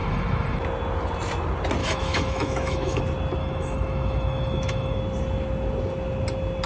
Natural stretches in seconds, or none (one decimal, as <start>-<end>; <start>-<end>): 0.6-1.8; 3.0-3.4; 5.0-6.7